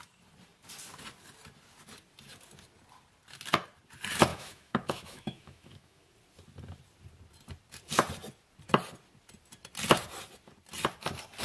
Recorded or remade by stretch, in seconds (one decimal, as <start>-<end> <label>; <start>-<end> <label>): 0.0-4.3 recorded; 4.3-6.1 remade; 6.1-11.4 recorded